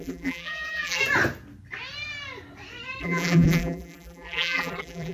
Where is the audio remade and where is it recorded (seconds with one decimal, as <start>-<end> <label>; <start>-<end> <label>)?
0.0-1.0 remade; 1.0-3.0 recorded; 3.0-5.1 remade